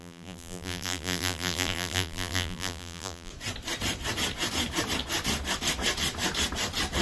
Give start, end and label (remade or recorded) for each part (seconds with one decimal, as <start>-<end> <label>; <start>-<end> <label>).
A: 0.0-3.3 remade; 3.3-7.0 recorded